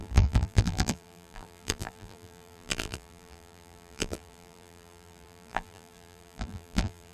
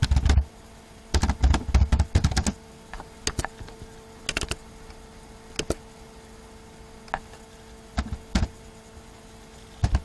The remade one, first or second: first